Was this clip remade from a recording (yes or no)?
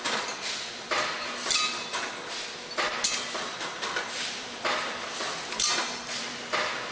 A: no